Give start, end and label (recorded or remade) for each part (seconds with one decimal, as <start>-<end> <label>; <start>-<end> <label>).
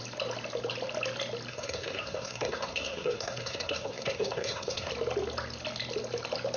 0.0-1.5 recorded; 1.5-4.9 remade; 4.9-6.6 recorded